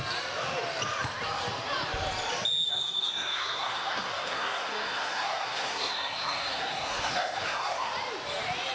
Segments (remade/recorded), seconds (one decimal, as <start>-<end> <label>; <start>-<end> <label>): 0.0-2.7 recorded; 2.7-7.9 remade; 7.9-8.7 recorded